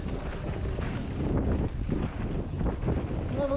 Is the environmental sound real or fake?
real